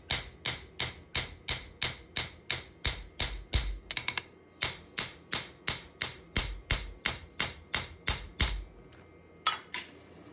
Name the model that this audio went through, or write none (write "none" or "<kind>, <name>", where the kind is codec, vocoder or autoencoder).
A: none